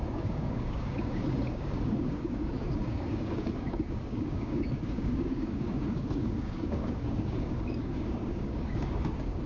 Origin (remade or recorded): remade